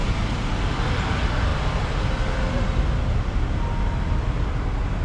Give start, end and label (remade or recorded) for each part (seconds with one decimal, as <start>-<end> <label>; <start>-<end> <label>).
0.0-0.6 remade; 0.6-5.0 recorded